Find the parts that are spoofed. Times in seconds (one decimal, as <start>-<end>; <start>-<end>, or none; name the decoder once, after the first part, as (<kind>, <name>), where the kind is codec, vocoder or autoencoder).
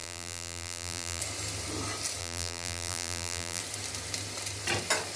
0.0-1.2 (vocoder, BigVGAN v2); 2.2-3.6